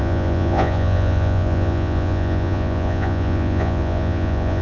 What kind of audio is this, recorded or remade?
remade